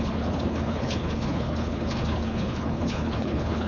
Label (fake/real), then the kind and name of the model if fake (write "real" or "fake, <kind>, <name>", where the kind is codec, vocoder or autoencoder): fake, codec, HILCodec